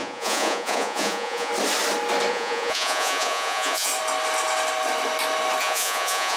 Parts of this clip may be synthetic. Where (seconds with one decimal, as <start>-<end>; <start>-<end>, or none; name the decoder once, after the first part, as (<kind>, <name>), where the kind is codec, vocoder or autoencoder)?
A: 0.0-1.5 (vocoder, Vocos); 2.3-3.9; 5.6-6.4